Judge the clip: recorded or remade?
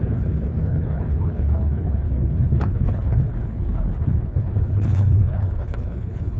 remade